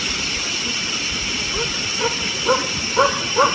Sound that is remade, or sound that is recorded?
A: recorded